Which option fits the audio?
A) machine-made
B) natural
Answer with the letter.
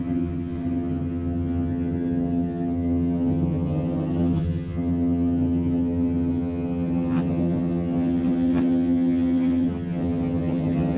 A